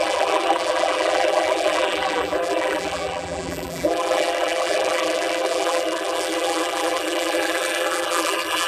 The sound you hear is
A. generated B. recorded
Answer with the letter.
A